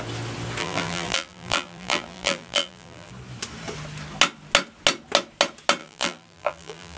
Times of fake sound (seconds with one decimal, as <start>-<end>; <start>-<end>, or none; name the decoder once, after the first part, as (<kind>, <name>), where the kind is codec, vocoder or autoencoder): 0.6-3.1 (vocoder, BigVGAN v2); 5.8-7.0